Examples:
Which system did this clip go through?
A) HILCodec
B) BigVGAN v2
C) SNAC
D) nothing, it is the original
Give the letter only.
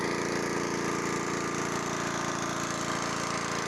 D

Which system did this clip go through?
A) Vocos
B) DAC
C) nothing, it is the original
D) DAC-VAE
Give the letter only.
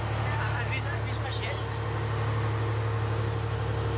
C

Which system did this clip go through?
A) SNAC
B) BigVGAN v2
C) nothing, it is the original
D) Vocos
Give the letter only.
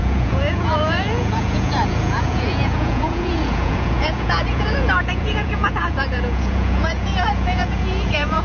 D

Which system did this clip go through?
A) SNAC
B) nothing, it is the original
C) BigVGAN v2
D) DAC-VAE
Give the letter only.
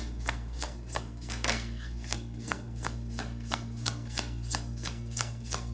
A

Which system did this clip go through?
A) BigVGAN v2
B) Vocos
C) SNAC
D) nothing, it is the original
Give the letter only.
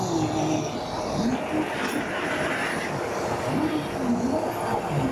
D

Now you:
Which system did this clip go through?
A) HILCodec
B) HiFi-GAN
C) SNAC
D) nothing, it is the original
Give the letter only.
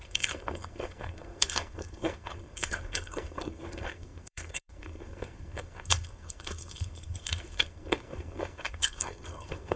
C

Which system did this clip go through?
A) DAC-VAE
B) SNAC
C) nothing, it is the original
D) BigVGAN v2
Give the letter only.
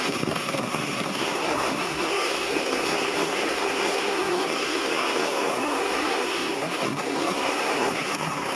B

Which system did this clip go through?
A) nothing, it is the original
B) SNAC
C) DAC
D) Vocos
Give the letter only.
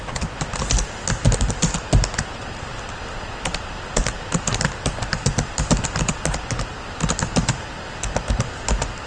A